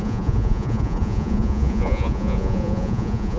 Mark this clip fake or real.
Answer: fake